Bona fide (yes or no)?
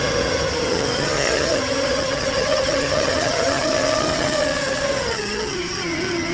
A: no